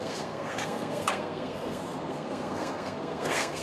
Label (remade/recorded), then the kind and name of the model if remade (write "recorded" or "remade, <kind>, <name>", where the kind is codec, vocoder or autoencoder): remade, codec, SNAC